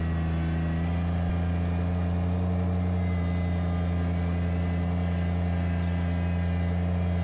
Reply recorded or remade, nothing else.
recorded